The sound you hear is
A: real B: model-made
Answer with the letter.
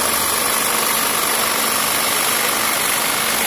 A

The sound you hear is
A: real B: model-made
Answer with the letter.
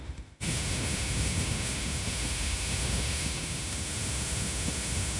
B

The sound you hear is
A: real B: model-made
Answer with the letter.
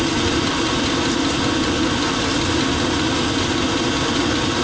A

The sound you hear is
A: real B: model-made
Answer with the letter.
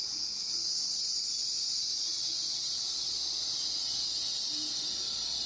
A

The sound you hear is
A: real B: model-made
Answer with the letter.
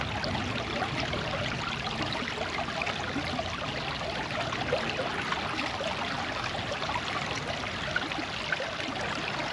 A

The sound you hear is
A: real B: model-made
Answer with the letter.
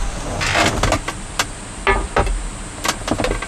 A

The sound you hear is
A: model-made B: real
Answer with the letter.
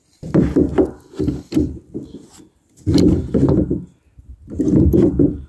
B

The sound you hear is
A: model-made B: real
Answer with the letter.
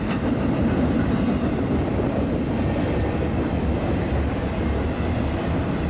B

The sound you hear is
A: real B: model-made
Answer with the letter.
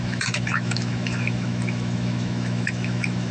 B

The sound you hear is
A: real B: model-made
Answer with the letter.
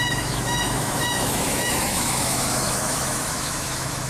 B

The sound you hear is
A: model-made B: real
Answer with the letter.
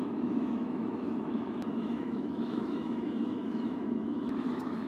A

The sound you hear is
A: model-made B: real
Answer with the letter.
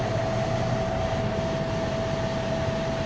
B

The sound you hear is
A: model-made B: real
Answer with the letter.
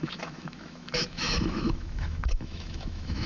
A